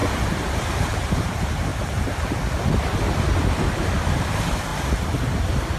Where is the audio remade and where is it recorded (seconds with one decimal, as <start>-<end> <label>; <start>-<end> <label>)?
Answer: 0.0-1.7 remade; 1.7-3.8 recorded; 3.8-4.7 remade; 4.7-5.8 recorded